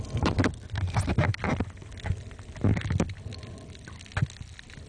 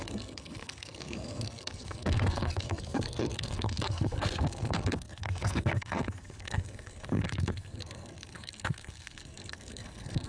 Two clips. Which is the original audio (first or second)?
first